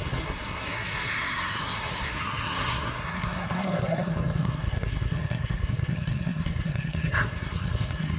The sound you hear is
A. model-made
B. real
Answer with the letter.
A